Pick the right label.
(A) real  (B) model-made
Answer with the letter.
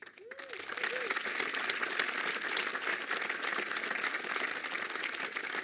A